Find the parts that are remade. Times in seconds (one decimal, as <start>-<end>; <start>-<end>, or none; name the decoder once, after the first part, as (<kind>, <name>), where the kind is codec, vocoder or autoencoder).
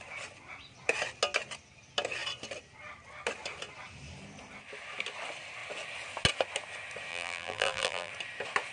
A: 7.1-8.1 (vocoder, BigVGAN v2)